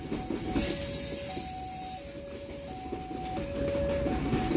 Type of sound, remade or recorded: recorded